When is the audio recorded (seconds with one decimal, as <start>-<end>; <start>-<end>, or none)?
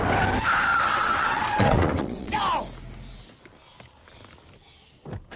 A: 0.0-0.7; 2.4-5.4